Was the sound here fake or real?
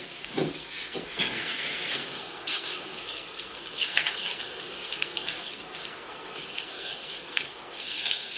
fake